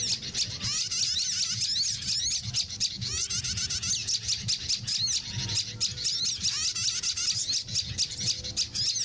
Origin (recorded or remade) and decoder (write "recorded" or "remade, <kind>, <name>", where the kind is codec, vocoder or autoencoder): recorded